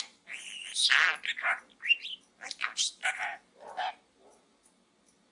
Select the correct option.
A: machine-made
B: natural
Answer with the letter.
A